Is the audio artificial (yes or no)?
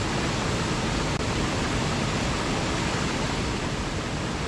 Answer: no